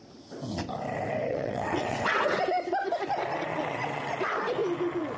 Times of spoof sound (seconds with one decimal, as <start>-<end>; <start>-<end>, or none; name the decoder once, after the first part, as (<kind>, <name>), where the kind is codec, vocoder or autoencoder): 1.3-2.4 (vocoder, WaveNeXt); 3.5-4.1